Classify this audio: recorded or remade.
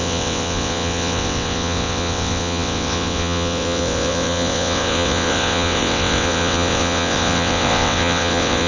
remade